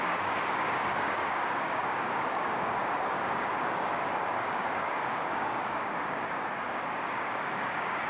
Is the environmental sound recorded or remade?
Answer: remade